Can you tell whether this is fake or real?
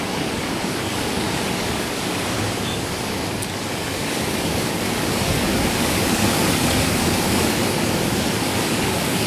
fake